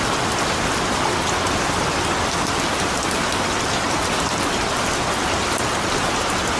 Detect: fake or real real